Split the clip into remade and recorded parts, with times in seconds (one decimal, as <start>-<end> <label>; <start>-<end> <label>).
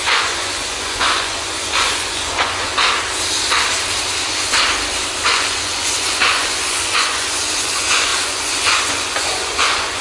0.0-2.7 remade; 2.7-5.3 recorded; 5.3-10.0 remade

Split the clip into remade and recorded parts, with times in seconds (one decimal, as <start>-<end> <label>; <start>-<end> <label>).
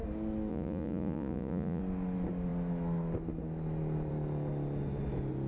0.0-0.5 recorded; 0.5-1.8 remade; 1.8-5.5 recorded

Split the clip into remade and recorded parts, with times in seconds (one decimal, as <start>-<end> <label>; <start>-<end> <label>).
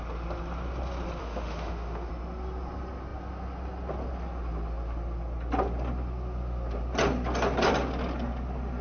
0.0-1.2 recorded; 1.2-2.1 remade; 2.1-8.8 recorded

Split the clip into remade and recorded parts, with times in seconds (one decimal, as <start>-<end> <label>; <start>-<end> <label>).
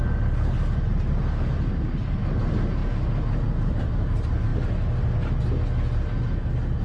0.0-6.8 recorded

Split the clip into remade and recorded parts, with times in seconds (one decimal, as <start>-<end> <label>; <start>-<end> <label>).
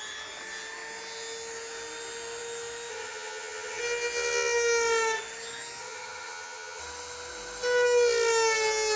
0.0-2.9 recorded; 2.9-3.8 remade; 3.8-5.8 recorded; 5.8-6.8 remade; 6.8-9.0 recorded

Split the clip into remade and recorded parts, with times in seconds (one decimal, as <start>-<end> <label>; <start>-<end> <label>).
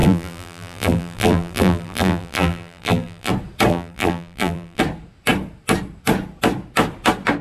0.0-3.3 remade; 3.3-3.7 recorded; 3.7-4.8 remade; 4.8-7.4 recorded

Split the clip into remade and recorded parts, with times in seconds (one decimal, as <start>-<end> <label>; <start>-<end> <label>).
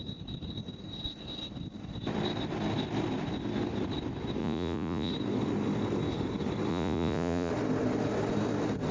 0.0-4.4 recorded; 4.4-5.1 remade; 5.1-6.7 recorded; 6.7-7.5 remade; 7.5-8.9 recorded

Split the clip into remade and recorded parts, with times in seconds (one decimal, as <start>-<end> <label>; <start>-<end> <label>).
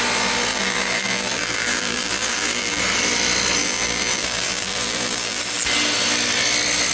0.0-0.5 recorded; 0.5-2.8 remade; 2.8-3.6 recorded; 3.6-5.4 remade; 5.4-6.9 recorded